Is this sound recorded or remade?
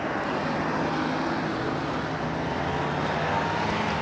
recorded